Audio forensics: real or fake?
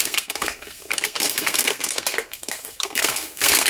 fake